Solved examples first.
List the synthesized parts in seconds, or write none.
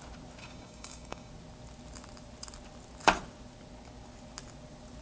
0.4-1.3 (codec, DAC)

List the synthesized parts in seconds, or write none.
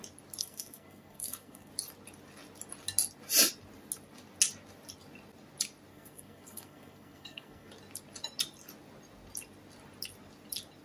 0.4-1.7 (codec, SNAC); 5.9-7.7